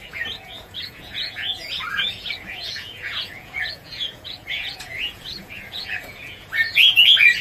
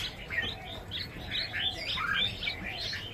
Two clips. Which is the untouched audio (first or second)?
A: second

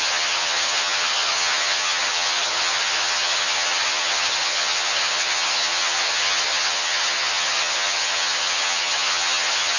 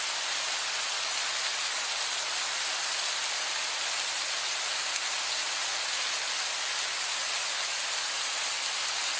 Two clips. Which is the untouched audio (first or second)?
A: second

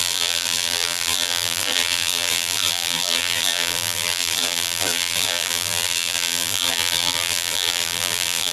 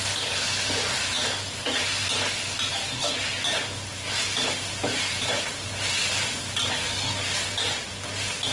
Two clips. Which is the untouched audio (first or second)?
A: second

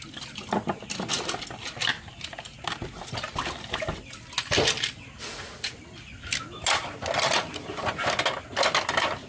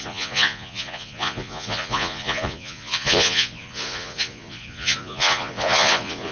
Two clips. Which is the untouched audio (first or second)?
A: first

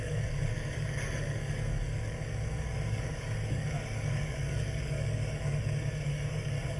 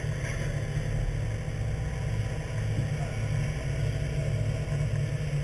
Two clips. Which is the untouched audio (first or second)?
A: second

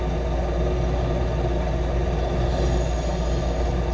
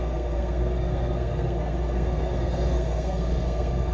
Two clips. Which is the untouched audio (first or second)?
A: first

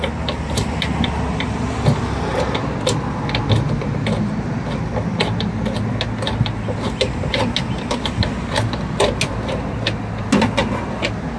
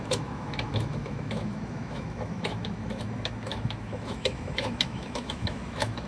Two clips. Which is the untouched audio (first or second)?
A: first